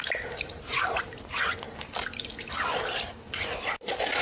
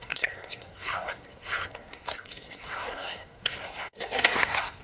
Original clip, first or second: first